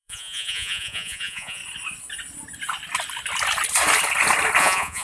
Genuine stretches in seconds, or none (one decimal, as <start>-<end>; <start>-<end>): 1.6-4.6